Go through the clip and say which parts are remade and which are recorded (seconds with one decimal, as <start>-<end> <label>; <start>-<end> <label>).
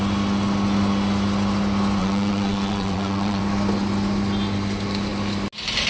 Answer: 0.0-2.0 recorded; 2.0-3.4 remade; 3.4-5.9 recorded